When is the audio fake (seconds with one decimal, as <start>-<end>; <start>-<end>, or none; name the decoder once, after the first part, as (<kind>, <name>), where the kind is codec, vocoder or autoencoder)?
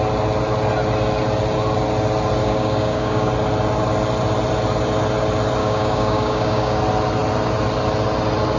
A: 2.4-3.3 (codec, DAC); 5.6-6.8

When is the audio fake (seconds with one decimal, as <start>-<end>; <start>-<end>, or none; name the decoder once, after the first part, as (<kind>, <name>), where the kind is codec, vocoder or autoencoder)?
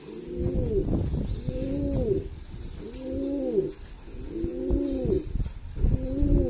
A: none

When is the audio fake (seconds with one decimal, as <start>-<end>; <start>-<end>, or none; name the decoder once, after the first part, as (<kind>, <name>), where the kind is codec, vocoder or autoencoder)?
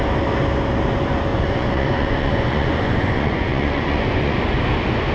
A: 1.3-4.4 (vocoder, Vocos)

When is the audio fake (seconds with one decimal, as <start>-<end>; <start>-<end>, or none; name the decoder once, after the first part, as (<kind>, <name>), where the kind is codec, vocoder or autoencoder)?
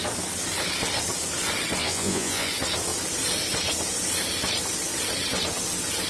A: 1.8-2.5 (vocoder, Vocos)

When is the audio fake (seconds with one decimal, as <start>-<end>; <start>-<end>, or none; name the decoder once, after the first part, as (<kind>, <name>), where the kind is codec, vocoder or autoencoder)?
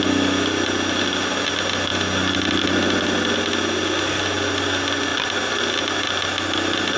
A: none